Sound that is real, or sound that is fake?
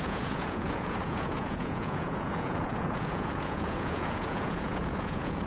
fake